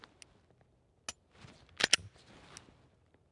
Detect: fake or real real